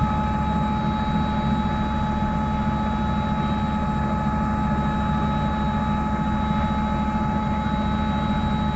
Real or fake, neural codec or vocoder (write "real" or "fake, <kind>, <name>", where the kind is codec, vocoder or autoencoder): real